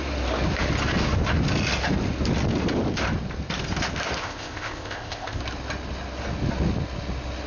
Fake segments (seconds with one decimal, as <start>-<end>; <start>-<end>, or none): 4.2-5.4